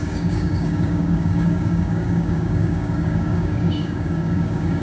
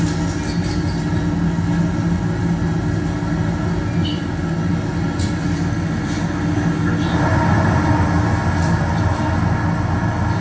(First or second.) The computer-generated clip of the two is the first